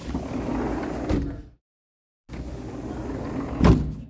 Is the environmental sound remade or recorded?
recorded